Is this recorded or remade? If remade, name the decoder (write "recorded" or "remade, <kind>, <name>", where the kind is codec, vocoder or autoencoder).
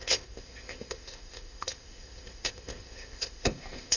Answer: remade, codec, ZipCodec